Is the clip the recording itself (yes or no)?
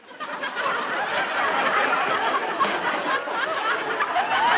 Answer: yes